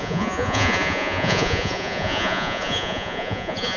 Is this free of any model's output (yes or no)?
no